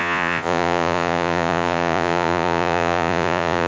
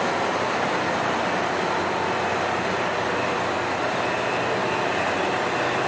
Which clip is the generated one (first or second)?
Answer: first